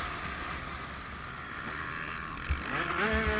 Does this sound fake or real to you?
real